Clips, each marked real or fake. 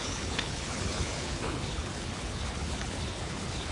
fake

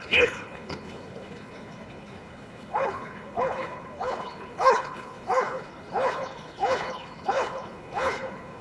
fake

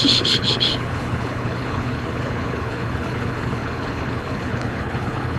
fake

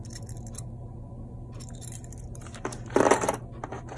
real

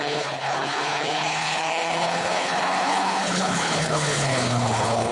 fake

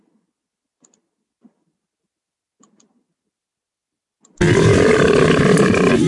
real